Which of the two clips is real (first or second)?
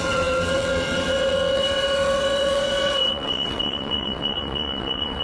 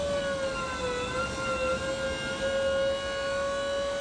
second